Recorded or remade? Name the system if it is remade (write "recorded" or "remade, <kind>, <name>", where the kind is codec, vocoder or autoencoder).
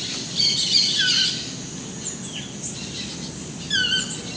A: recorded